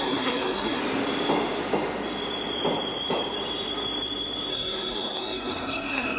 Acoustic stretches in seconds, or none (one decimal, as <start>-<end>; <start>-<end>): 0.8-4.5